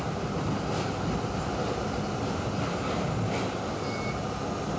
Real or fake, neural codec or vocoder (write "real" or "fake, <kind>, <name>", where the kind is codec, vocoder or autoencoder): real